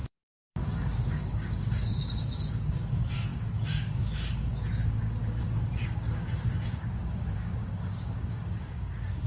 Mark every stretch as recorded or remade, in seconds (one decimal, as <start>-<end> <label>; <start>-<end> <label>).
0.0-9.3 remade